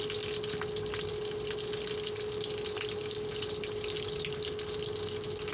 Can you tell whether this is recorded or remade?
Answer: recorded